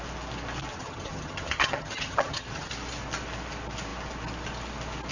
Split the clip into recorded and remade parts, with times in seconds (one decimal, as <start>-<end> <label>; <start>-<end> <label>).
0.0-0.7 recorded; 0.7-2.7 remade; 2.7-5.1 recorded